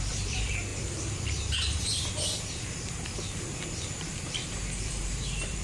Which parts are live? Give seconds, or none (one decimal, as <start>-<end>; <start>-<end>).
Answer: none